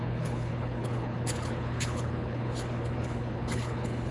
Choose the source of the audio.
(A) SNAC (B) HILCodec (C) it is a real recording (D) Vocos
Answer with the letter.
B